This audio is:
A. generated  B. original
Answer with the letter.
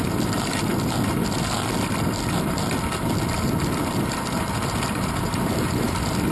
B